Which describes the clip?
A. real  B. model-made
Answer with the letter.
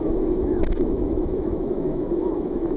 B